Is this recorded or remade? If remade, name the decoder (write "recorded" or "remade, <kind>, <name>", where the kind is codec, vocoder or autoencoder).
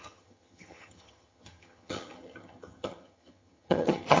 remade, vocoder, HiFi-GAN